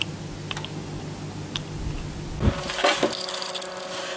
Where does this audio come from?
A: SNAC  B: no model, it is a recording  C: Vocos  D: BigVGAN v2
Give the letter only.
B